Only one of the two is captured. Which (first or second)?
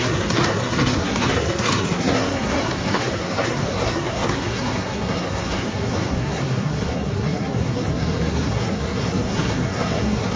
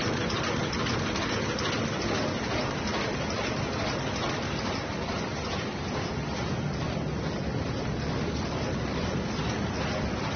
second